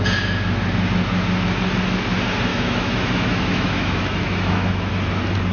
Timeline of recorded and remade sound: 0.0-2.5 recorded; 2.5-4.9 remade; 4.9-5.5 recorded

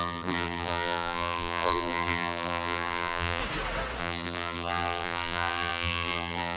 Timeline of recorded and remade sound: 0.0-3.4 remade; 3.4-4.0 recorded; 4.0-6.6 remade

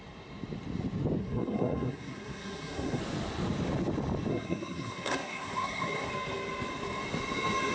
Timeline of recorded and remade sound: 0.0-1.2 recorded; 1.2-3.0 remade; 3.0-4.3 recorded; 4.3-6.1 remade; 6.1-7.7 recorded